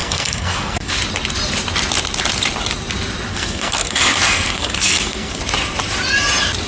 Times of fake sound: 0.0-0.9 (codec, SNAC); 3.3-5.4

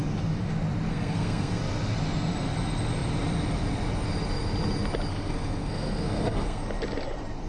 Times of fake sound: 0.9-1.6 (codec, SNAC); 5.1-6.6

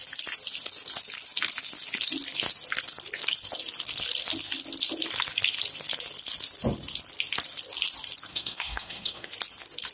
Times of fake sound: 8.3-9.3 (codec, SNAC)

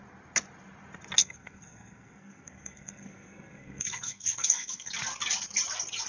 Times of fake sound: 1.2-4.9 (codec, SNAC)

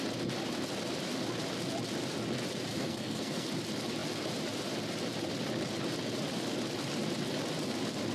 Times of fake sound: 2.7-3.5 (codec, SNAC)

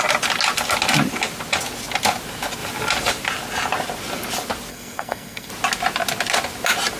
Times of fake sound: 4.7-5.5 (codec, SNAC)